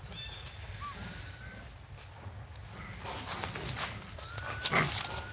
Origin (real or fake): real